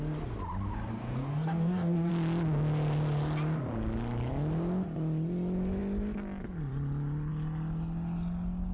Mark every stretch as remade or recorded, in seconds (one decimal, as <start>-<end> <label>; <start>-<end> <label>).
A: 0.0-0.9 recorded; 0.9-2.1 remade; 2.1-8.7 recorded